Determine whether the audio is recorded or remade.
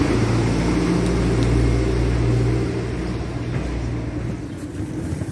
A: recorded